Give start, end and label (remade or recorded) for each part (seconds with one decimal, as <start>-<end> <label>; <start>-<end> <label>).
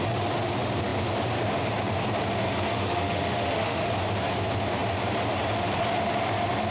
0.0-2.7 recorded; 2.7-3.9 remade; 3.9-6.7 recorded